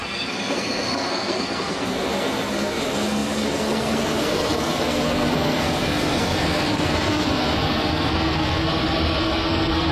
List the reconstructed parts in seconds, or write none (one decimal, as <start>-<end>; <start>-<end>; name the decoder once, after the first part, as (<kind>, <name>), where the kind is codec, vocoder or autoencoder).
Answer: 0.0-8.7 (codec, SNAC); 9.2-9.9